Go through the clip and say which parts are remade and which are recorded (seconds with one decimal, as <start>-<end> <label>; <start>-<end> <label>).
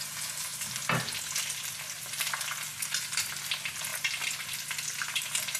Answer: 0.0-5.6 recorded